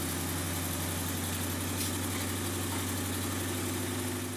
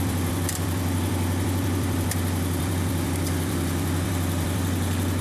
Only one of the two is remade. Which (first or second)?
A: second